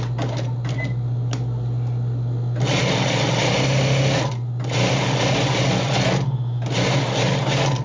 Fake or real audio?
real